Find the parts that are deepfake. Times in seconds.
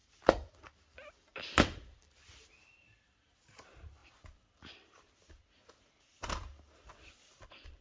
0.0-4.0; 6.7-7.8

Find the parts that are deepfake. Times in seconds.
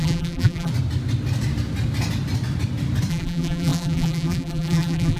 0.0-0.7; 3.1-5.2